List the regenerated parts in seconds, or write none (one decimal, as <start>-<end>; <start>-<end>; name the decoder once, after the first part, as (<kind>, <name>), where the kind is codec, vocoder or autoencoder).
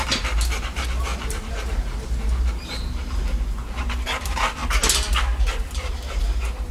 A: 0.0-4.6 (vocoder, BigVGAN v2); 5.2-6.7